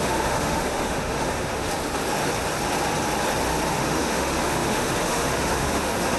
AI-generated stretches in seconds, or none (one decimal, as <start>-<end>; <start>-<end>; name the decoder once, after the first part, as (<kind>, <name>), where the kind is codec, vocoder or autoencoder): 0.0-1.7 (autoencoder, DAC-VAE); 3.7-6.2